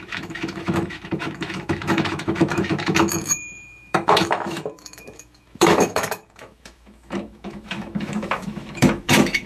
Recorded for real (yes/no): no